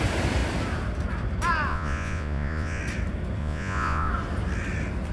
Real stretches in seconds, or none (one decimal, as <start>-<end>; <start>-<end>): 0.0-1.7; 2.8-3.4; 4.1-5.1